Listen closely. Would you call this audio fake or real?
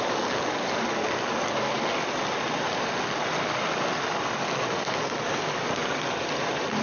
real